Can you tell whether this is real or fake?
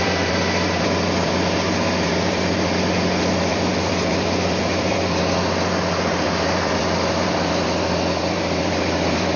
fake